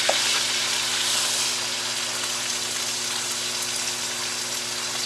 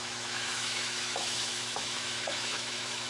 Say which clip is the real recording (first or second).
first